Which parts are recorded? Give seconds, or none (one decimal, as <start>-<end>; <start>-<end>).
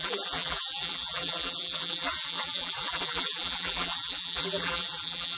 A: none